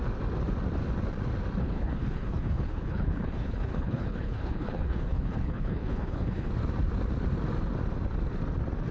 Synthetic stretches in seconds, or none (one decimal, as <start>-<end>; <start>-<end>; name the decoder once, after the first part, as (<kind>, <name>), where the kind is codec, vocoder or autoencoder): 1.6-6.5 (codec, HILCodec)